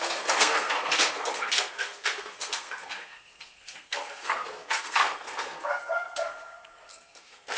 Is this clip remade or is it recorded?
remade